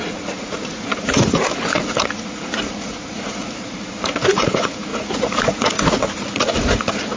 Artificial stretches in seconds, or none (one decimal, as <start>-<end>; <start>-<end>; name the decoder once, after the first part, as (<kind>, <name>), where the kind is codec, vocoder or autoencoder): 0.0-7.2 (vocoder, Vocos)